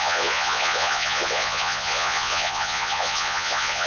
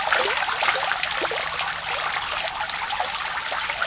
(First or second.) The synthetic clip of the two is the first